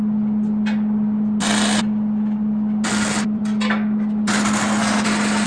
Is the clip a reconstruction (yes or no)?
no